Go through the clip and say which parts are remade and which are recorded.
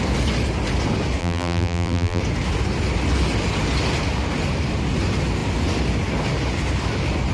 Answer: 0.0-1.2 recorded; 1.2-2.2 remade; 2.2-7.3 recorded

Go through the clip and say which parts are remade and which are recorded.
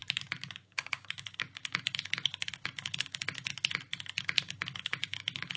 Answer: 0.0-0.6 recorded; 0.6-3.5 remade; 3.5-4.2 recorded; 4.2-5.6 remade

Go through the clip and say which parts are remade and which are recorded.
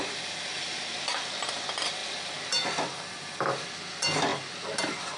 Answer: 0.0-5.2 recorded